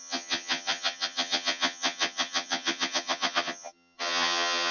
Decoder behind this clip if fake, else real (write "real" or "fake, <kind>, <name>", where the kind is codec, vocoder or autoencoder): fake, vocoder, HiFi-GAN